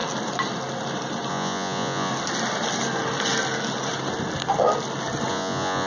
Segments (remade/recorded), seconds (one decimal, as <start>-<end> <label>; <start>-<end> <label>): 0.0-1.3 recorded; 1.3-2.1 remade; 2.1-5.3 recorded; 5.3-5.9 remade